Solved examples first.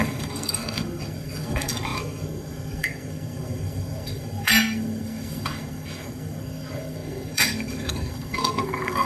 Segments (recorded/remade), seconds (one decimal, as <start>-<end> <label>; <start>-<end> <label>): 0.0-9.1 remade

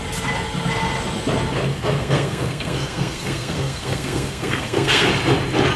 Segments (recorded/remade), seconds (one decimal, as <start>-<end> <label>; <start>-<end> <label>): 0.0-1.7 recorded; 1.7-5.1 remade; 5.1-5.8 recorded

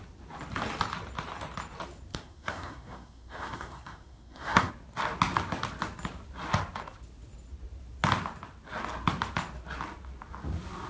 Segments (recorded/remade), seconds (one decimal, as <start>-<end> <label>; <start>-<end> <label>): 0.0-2.1 recorded; 2.1-4.7 remade; 4.7-10.9 recorded

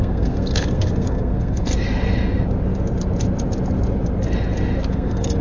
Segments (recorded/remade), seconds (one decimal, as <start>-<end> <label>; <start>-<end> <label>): 0.0-1.7 remade; 1.7-4.9 recorded; 4.9-5.4 remade

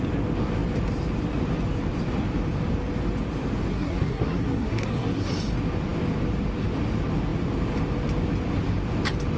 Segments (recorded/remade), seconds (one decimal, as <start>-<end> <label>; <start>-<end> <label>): 0.0-3.7 recorded; 3.7-5.3 remade; 5.3-9.4 recorded